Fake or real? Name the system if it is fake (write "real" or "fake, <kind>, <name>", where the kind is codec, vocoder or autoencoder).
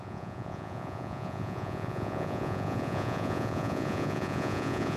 fake, vocoder, Vocos